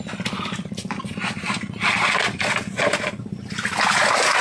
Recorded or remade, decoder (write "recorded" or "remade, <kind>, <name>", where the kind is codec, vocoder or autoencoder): recorded